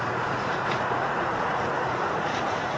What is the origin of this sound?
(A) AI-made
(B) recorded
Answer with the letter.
A